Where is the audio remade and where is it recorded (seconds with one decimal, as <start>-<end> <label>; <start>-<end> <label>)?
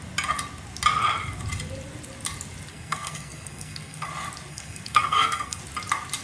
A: 0.0-2.7 recorded; 2.7-4.1 remade; 4.1-4.5 recorded; 4.5-5.6 remade; 5.6-6.2 recorded